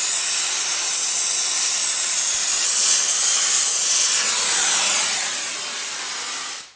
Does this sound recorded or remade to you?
recorded